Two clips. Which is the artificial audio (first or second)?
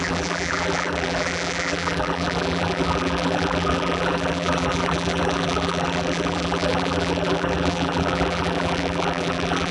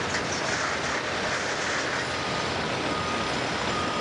first